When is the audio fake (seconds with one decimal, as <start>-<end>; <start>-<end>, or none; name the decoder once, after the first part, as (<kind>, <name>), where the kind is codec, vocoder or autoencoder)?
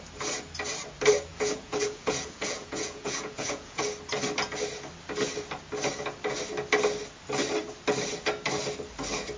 1.3-3.8 (vocoder, Vocos)